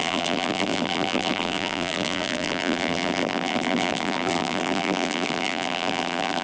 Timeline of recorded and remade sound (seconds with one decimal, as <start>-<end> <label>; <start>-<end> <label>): 0.0-6.4 remade